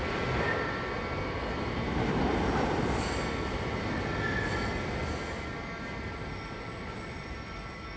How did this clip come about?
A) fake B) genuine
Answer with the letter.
B